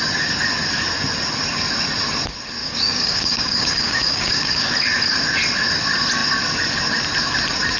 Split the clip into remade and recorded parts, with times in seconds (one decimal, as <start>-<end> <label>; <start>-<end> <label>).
0.0-2.6 recorded; 2.6-4.7 remade; 4.7-7.8 recorded